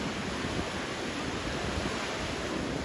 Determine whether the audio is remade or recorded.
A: recorded